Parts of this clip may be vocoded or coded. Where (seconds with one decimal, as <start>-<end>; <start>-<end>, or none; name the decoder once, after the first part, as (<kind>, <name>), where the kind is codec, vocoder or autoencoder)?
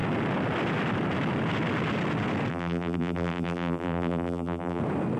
2.5-4.8 (vocoder, BigVGAN v2)